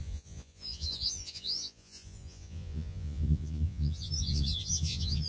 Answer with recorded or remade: remade